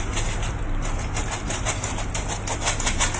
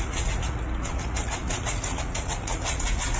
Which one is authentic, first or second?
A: first